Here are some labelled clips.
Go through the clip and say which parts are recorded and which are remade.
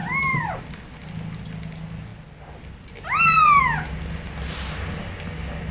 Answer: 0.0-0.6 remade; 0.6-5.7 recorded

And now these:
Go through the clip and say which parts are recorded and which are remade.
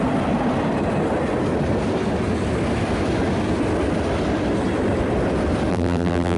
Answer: 0.0-5.7 recorded; 5.7-6.4 remade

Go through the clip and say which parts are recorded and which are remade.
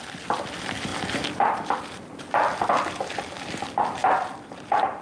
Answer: 0.0-5.0 remade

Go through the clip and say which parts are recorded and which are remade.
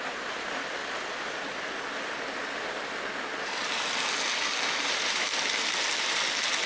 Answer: 0.0-0.8 remade; 0.8-4.8 recorded; 4.8-5.3 remade; 5.3-6.7 recorded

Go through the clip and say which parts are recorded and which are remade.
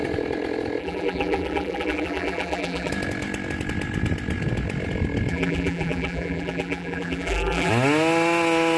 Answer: 0.0-0.8 recorded; 0.8-2.9 remade; 2.9-5.3 recorded; 5.3-7.7 remade; 7.7-8.8 recorded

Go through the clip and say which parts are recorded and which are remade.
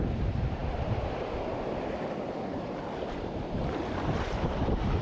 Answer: 0.0-5.0 remade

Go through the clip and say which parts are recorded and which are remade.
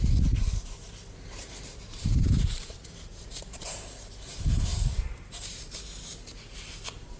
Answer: 0.0-1.4 recorded; 1.4-3.6 remade; 3.6-4.7 recorded; 4.7-5.8 remade; 5.8-7.2 recorded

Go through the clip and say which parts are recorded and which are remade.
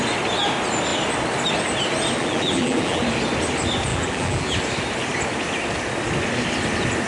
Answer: 0.0-2.2 recorded; 2.2-3.0 remade; 3.0-3.9 recorded; 3.9-4.6 remade; 4.6-7.1 recorded